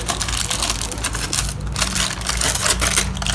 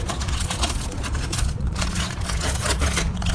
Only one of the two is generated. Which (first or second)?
second